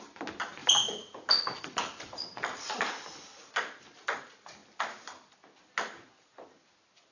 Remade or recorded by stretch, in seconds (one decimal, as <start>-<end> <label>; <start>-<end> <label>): 0.0-7.1 recorded